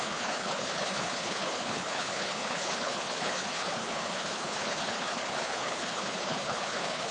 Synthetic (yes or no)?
yes